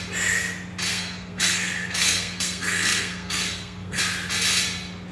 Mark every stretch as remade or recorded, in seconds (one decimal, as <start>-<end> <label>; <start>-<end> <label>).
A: 0.0-0.9 recorded; 0.9-4.0 remade; 4.0-5.1 recorded